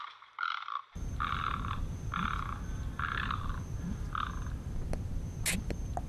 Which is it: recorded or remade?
recorded